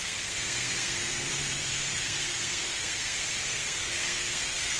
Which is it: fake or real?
fake